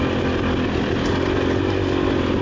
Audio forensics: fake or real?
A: real